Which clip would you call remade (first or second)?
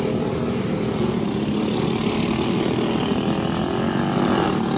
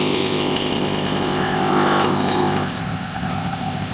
second